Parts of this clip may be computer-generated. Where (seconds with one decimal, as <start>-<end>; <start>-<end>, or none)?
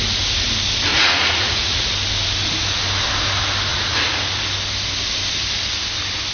0.9-1.9; 3.7-4.4